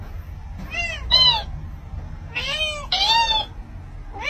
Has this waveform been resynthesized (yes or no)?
no